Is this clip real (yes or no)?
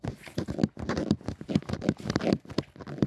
yes